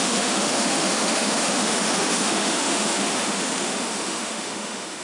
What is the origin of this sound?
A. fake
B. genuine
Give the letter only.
A